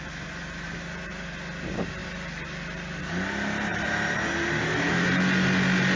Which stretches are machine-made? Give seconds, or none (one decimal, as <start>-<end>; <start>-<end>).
none

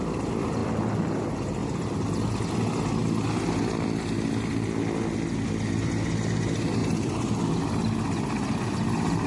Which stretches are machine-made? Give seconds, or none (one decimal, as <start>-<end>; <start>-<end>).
1.6-2.3; 6.8-7.6

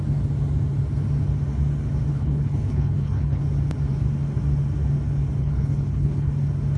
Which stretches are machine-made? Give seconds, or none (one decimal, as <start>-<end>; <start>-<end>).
2.1-3.4; 5.4-6.3

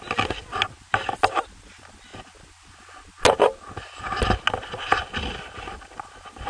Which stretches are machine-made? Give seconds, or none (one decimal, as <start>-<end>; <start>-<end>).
none

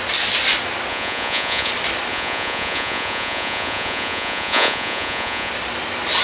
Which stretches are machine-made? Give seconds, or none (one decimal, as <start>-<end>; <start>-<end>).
0.9-1.7; 2.1-5.5

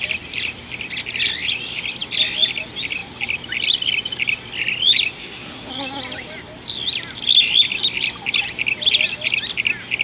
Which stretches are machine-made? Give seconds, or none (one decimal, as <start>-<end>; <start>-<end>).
5.2-5.7

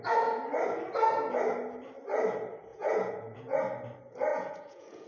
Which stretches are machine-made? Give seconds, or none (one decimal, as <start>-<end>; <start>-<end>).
2.7-3.6; 4.3-5.1

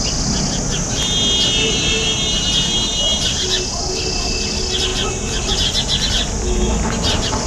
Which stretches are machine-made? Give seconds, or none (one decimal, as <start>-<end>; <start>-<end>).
none